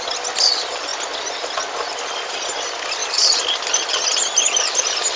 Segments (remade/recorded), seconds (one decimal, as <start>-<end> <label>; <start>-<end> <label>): 0.0-5.2 recorded